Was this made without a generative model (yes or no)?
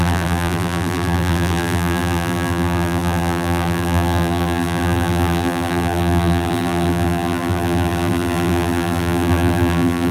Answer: no